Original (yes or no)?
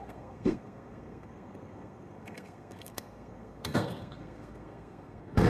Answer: no